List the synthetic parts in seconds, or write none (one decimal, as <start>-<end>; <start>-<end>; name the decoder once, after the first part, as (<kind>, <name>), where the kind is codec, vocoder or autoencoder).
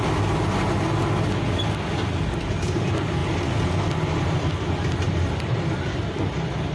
none